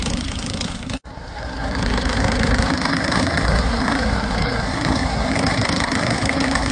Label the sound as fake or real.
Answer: fake